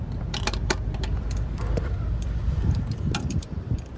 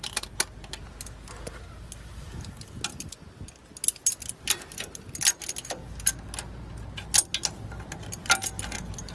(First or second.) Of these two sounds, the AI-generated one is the first